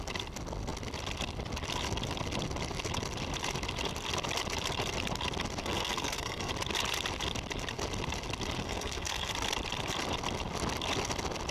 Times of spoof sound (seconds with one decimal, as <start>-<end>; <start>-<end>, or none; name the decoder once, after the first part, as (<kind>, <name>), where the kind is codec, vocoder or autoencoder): 5.6-6.5 (codec, SNAC); 8.6-9.3

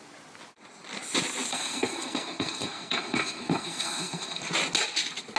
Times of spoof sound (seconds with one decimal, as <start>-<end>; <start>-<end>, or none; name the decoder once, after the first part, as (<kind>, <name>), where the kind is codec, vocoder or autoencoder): 1.5-4.4 (codec, SNAC)